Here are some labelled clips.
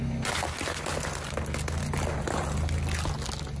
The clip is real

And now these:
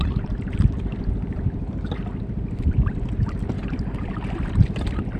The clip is real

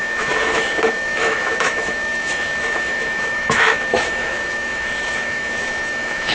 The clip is fake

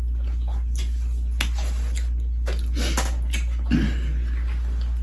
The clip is real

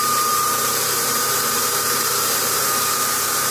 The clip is fake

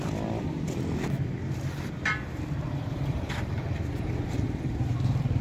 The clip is fake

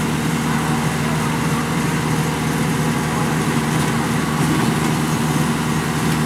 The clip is real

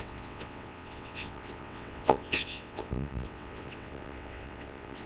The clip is fake